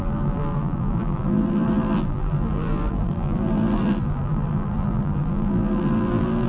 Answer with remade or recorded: remade